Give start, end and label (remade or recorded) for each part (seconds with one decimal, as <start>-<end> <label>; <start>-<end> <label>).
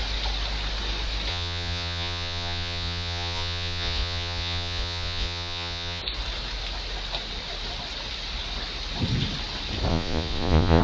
0.0-1.3 recorded; 1.3-6.0 remade; 6.0-9.9 recorded; 9.9-10.8 remade